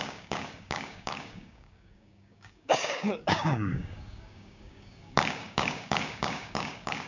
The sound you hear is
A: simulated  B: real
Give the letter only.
A